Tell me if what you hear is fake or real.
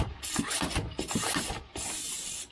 real